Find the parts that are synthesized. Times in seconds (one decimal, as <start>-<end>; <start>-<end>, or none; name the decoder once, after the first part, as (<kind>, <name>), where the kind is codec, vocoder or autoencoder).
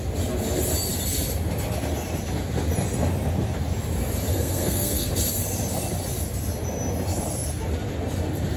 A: 4.3-5.1 (codec, SNAC)